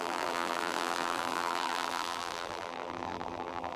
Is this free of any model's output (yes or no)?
no